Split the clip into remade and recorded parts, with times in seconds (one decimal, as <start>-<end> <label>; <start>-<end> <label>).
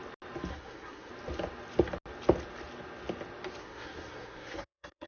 0.0-0.5 recorded; 0.5-1.1 remade; 1.1-3.6 recorded; 3.6-5.1 remade